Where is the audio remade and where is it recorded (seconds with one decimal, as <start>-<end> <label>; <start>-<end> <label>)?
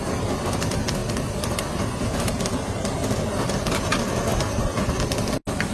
0.0-5.7 recorded